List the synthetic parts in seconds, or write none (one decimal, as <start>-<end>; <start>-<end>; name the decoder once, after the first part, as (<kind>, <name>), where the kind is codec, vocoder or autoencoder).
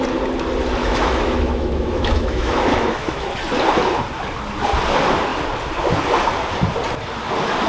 0.8-3.3 (autoencoder, DAC-VAE)